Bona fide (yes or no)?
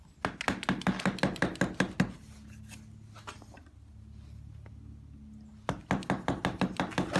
yes